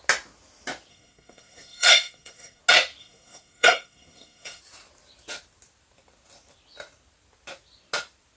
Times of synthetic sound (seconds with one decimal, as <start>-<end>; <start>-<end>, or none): 0.9-2.6; 3.0-4.6